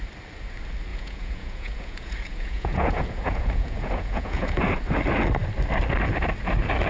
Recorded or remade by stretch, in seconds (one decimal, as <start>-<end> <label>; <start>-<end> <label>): 0.0-0.9 recorded; 0.9-4.6 remade; 4.6-6.9 recorded